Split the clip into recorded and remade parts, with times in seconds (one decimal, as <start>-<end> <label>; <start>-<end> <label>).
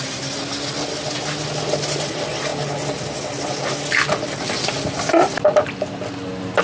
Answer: 0.0-6.6 recorded